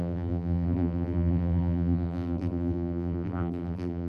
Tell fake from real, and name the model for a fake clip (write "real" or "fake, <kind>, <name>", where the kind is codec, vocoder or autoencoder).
fake, vocoder, BigVGAN v2